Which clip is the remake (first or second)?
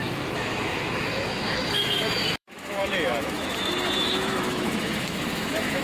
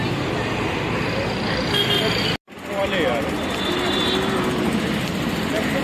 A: first